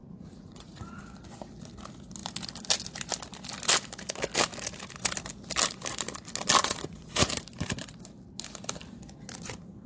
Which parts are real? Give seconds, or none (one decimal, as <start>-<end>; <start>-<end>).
1.0-6.6; 7.3-9.9